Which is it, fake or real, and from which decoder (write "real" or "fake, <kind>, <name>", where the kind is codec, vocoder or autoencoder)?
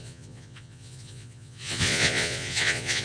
fake, vocoder, Vocos